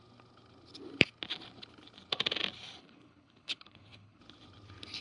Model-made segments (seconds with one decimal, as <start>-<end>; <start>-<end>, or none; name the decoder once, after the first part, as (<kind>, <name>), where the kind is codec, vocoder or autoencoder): 2.8-4.2 (codec, HILCodec)